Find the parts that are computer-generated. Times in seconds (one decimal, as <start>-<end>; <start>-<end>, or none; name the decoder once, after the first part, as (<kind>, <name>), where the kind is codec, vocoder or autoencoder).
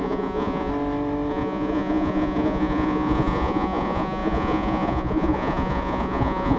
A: 0.0-0.7 (vocoder, Vocos); 1.3-6.6